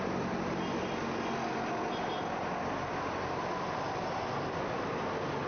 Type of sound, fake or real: real